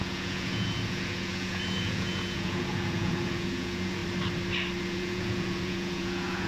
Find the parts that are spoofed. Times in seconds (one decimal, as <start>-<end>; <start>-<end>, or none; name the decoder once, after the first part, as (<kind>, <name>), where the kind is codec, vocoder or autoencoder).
0.0-4.0 (vocoder, Vocos); 4.8-6.5